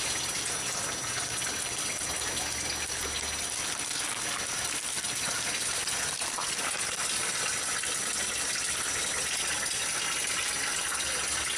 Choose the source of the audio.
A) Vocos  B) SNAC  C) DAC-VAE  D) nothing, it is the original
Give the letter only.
D